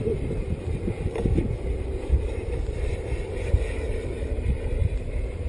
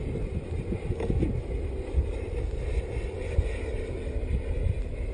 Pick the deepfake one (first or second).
first